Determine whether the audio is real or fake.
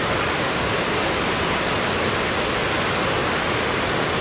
real